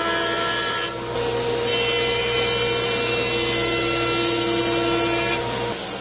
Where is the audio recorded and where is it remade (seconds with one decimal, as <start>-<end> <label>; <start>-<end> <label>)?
0.0-6.0 recorded